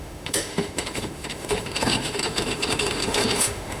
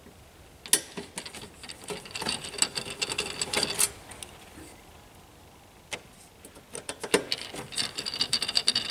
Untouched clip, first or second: second